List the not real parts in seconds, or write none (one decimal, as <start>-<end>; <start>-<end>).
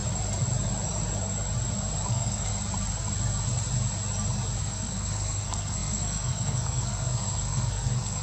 2.1-2.5; 4.6-8.2